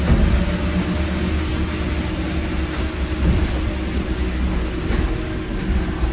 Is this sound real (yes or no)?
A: yes